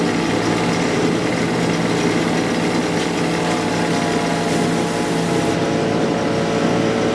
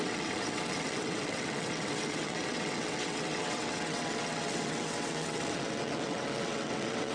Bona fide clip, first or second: first